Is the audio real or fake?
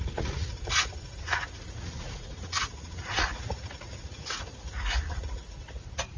fake